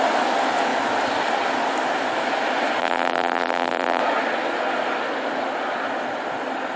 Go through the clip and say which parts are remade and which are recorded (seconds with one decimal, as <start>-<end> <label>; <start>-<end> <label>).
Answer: 0.0-2.8 recorded; 2.8-4.0 remade; 4.0-6.8 recorded